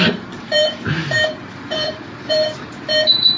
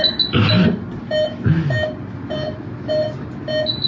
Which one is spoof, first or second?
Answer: first